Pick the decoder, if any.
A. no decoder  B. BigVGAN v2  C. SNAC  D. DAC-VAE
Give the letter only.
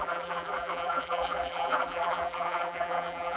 B